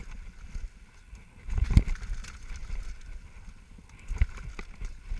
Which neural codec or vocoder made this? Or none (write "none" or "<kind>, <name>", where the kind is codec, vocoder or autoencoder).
none